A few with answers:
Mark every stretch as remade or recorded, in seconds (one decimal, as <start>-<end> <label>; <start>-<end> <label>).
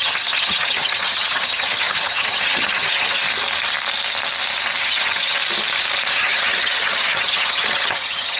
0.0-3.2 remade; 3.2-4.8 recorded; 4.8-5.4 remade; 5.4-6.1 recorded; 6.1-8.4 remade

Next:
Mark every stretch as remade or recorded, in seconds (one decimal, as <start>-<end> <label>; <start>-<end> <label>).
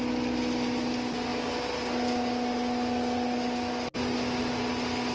0.0-5.1 recorded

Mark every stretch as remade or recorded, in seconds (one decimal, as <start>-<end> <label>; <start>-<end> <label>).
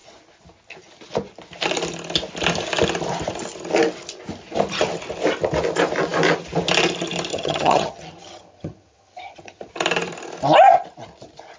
0.0-7.3 recorded; 7.3-9.7 remade; 9.7-11.6 recorded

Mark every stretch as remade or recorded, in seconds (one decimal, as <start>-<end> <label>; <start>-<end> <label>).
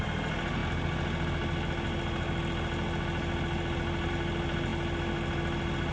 0.0-5.9 recorded